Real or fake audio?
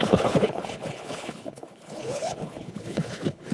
fake